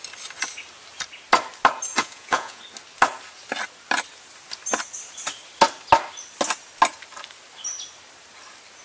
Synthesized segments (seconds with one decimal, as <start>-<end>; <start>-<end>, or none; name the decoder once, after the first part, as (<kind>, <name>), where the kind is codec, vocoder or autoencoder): 1.9-2.6 (vocoder, Vocos)